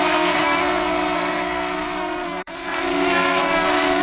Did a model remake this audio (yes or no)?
yes